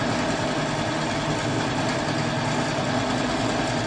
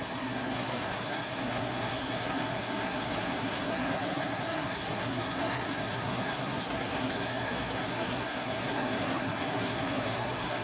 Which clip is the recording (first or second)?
first